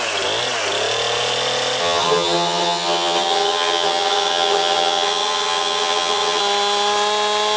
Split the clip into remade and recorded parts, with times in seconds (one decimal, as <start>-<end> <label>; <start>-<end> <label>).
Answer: 0.0-1.8 recorded; 1.8-6.4 remade; 6.4-7.6 recorded